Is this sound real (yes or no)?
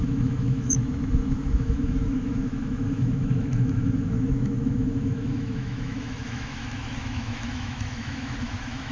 no